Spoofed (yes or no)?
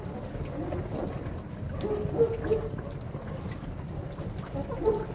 no